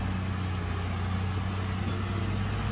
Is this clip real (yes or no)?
yes